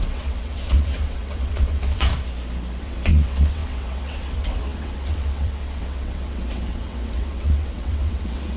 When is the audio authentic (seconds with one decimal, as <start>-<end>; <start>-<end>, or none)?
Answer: 2.1-2.8

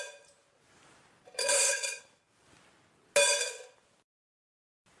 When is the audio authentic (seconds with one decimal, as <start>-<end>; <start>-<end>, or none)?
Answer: 0.0-1.4; 2.0-5.0

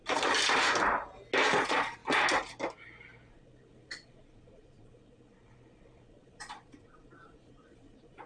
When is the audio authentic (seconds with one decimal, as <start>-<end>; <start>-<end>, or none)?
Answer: 0.0-1.6; 2.0-3.3

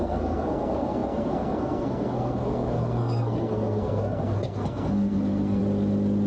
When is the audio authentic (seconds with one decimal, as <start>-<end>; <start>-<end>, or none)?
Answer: 5.6-6.3

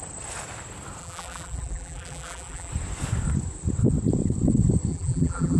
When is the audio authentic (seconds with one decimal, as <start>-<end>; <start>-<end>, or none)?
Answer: 0.0-1.0; 2.7-4.9